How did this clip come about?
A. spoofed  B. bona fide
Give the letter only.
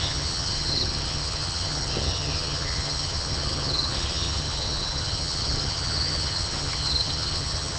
A